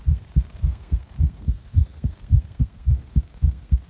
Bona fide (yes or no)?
no